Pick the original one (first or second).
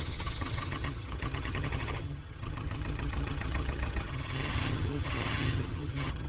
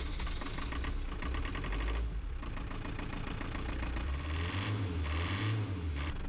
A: second